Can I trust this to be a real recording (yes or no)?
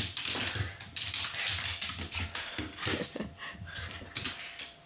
yes